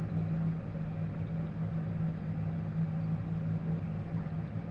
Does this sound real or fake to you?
real